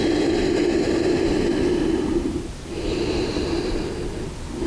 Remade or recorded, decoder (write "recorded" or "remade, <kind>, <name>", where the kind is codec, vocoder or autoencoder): recorded